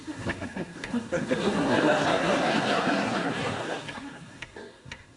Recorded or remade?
remade